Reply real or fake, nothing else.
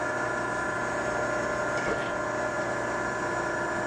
real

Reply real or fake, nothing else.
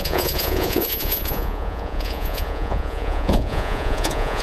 fake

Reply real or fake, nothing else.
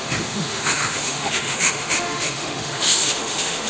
fake